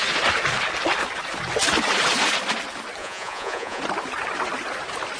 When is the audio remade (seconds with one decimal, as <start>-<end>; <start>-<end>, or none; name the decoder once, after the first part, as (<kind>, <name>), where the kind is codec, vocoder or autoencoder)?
3.0-3.8 (vocoder, Vocos)